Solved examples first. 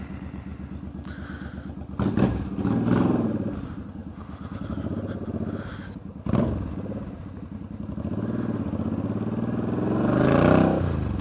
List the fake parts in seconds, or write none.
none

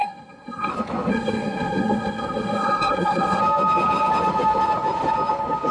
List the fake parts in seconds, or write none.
0.0-0.7 (codec, SNAC); 1.1-3.4

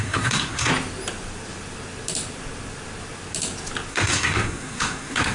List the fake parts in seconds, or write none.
0.0-0.7 (codec, SNAC); 3.9-5.3

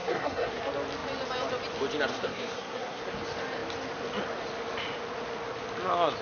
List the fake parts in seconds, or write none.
0.0-0.6 (codec, SNAC); 2.1-3.0